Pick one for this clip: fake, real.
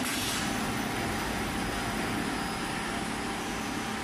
real